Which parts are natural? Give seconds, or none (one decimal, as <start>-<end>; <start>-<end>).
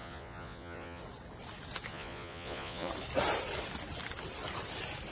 1.0-1.9; 2.9-5.1